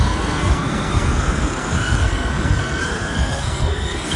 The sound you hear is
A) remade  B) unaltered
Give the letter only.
A